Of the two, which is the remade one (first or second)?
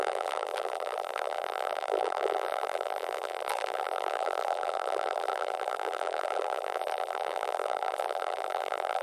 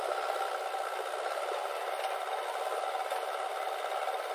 first